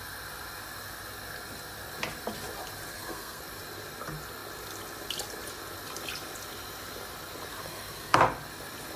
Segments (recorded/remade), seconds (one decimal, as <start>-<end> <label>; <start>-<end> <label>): 0.0-2.9 recorded; 2.9-3.4 remade; 3.4-7.5 recorded; 7.5-8.2 remade; 8.2-9.0 recorded